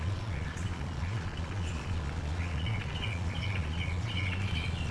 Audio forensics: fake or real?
fake